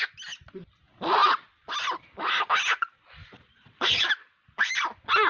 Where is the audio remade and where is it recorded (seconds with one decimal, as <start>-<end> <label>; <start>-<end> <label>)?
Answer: 0.0-3.2 recorded; 3.2-4.1 remade; 4.1-5.3 recorded

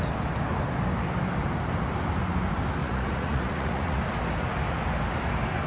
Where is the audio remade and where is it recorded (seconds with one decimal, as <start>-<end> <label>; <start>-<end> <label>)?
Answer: 0.0-2.8 recorded; 2.8-4.0 remade; 4.0-5.7 recorded